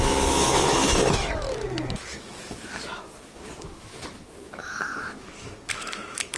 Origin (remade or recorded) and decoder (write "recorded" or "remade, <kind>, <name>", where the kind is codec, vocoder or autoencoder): remade, autoencoder, DAC-VAE